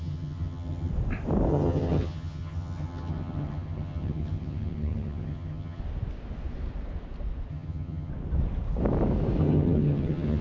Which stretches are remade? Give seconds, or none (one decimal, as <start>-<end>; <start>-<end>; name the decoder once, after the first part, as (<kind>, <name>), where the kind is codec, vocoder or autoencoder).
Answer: 0.0-0.9 (vocoder, HiFi-GAN); 1.5-5.8; 7.5-8.1; 9.4-10.4